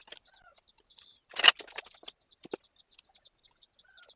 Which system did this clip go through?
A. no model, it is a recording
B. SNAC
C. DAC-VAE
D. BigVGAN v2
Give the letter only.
A